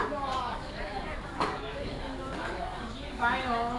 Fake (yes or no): yes